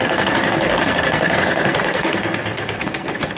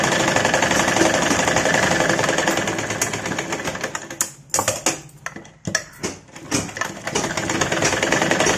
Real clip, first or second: second